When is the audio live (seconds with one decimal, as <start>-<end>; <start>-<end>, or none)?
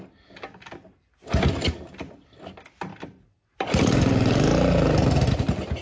0.0-5.8